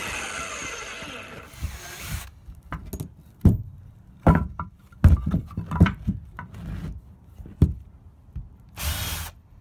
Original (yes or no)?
yes